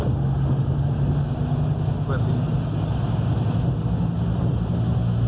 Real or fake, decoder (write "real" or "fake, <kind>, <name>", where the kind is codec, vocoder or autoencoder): real